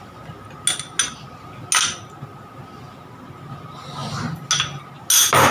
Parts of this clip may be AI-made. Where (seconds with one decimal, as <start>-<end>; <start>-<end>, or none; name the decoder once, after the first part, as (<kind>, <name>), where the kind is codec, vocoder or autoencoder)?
none